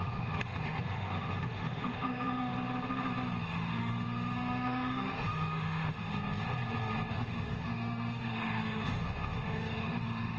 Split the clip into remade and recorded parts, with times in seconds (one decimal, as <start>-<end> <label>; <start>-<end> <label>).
0.0-2.5 remade; 2.5-3.4 recorded; 3.4-6.1 remade; 6.1-7.1 recorded; 7.1-10.4 remade